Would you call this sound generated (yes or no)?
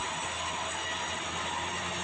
no